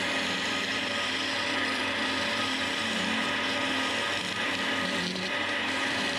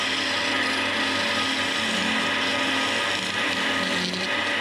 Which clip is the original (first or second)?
second